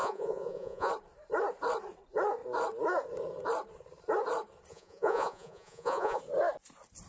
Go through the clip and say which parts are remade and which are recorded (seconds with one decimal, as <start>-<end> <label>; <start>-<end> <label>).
0.0-0.9 remade; 0.9-4.7 recorded; 4.7-6.2 remade; 6.2-7.1 recorded